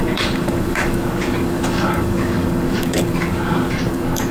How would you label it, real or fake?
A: fake